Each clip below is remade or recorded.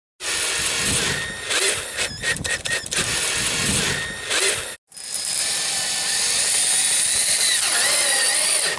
recorded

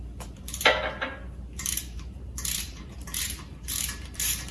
remade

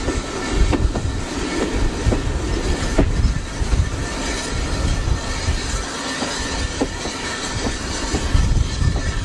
recorded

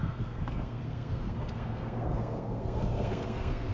remade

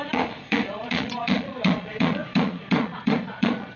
remade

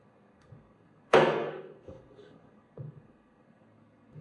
remade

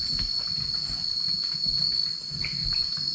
recorded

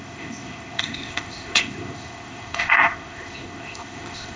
remade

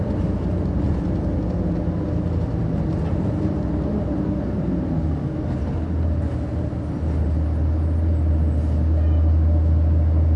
recorded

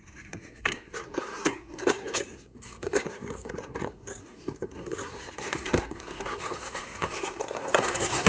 remade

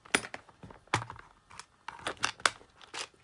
recorded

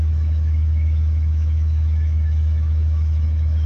remade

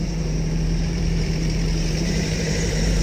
remade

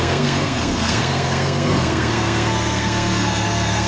remade